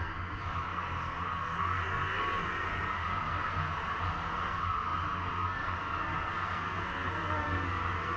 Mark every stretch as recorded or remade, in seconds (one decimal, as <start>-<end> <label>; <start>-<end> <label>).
0.0-8.2 remade

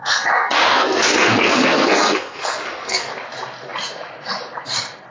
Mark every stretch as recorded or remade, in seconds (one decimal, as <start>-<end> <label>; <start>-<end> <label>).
0.0-3.1 remade; 3.1-5.1 recorded

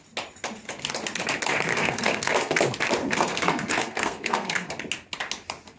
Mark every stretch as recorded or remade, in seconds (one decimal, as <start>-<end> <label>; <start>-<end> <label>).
0.0-1.7 recorded; 1.7-2.6 remade; 2.6-3.0 recorded; 3.0-4.7 remade; 4.7-5.8 recorded

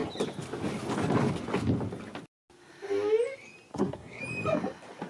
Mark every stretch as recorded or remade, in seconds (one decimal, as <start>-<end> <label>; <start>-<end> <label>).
0.0-3.7 recorded; 3.7-4.2 remade; 4.2-5.1 recorded

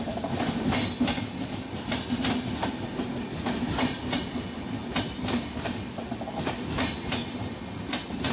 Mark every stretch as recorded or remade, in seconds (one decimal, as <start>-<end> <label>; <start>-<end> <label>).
0.0-8.3 recorded